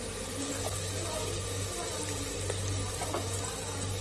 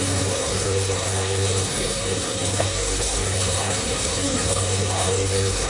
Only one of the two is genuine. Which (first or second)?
first